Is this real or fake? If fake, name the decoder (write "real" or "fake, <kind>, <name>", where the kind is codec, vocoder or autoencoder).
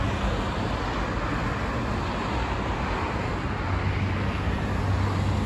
real